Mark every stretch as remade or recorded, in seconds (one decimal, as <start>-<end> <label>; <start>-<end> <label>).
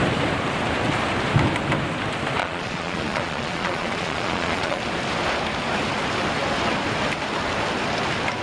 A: 0.0-2.4 recorded; 2.4-4.8 remade; 4.8-8.4 recorded